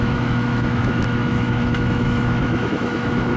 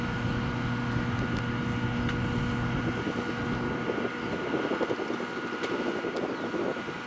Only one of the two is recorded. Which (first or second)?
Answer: second